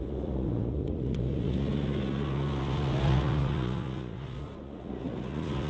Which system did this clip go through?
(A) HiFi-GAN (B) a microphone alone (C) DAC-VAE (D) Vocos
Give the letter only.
D